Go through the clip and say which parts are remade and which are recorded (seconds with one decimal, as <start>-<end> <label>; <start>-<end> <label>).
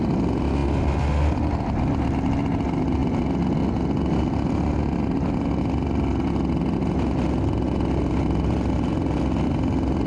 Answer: 0.0-10.1 recorded